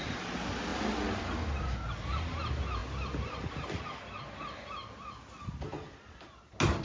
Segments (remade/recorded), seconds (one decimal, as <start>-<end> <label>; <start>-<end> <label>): 0.0-6.8 recorded